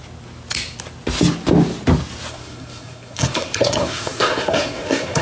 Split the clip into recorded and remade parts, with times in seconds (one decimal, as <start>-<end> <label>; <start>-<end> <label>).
0.0-2.3 recorded; 2.3-5.2 remade